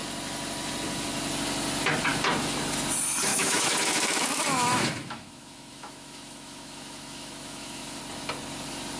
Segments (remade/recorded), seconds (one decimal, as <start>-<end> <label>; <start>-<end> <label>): 0.0-3.3 recorded; 3.3-8.0 remade; 8.0-9.0 recorded